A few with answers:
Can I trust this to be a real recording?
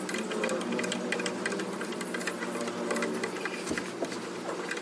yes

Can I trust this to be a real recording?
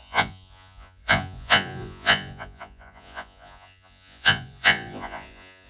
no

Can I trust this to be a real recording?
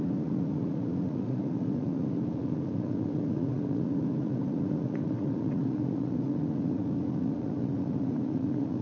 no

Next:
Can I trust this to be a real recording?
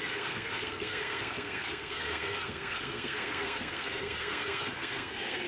no